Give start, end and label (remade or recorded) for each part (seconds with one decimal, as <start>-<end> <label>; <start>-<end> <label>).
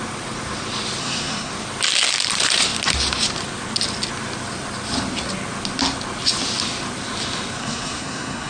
0.0-1.0 recorded; 1.0-1.5 remade; 1.5-7.6 recorded; 7.6-8.5 remade